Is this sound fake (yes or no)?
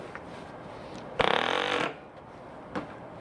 no